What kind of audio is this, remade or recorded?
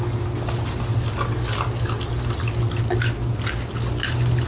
recorded